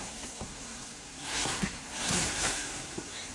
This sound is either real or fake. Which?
fake